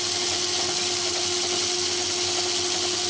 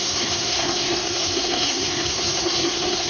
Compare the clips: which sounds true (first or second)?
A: first